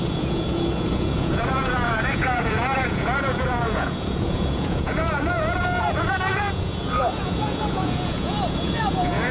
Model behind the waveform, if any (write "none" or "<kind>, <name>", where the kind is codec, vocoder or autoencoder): vocoder, Vocos